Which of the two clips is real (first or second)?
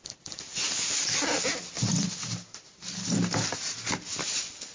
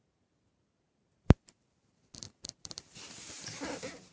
first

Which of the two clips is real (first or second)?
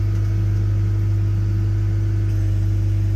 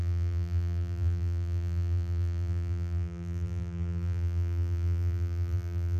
first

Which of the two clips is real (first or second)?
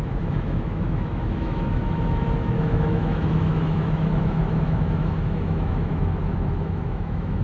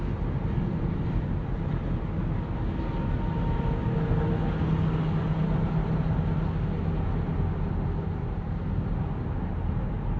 second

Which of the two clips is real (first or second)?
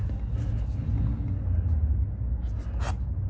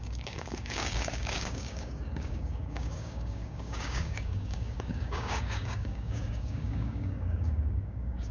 first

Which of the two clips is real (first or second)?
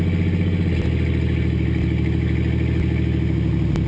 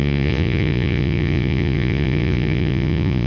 first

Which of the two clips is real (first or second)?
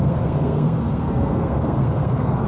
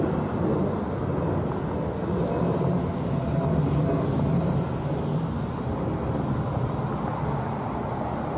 second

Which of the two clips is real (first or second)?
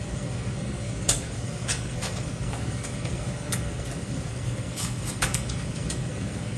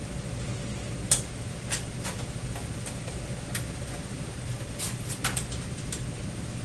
second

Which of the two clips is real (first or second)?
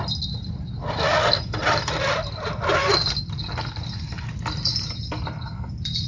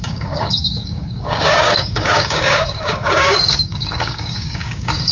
first